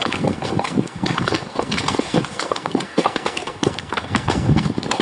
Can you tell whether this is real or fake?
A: fake